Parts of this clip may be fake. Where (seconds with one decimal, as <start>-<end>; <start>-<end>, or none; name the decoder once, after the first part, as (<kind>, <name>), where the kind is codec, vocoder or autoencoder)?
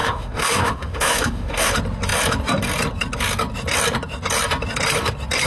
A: 0.0-1.7 (autoencoder, DAC-VAE)